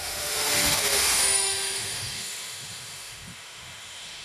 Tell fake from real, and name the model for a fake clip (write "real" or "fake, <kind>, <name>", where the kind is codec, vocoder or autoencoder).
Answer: fake, autoencoder, DAC-VAE